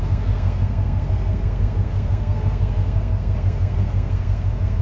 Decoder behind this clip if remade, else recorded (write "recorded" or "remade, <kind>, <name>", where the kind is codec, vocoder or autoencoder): remade, codec, SNAC